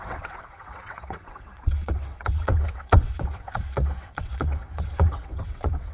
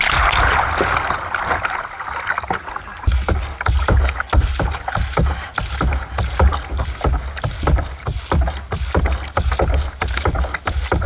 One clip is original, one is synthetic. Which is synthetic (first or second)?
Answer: first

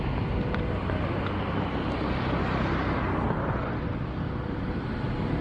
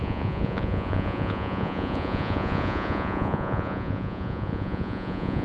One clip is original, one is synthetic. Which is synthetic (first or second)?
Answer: second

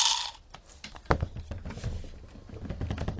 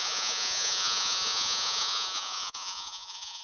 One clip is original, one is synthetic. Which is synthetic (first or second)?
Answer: second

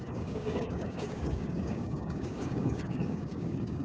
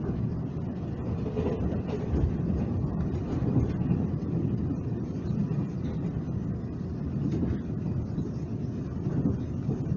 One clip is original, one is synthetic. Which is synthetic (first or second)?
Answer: first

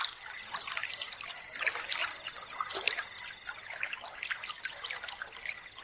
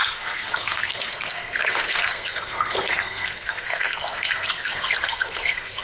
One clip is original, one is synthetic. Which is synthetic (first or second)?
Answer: second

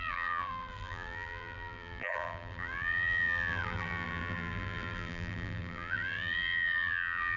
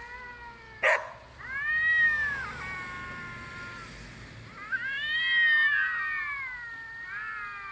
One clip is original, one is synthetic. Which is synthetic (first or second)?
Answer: first